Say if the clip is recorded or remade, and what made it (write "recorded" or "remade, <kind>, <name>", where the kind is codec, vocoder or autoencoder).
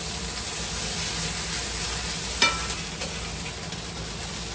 recorded